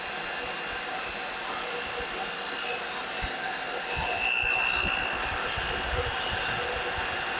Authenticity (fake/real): real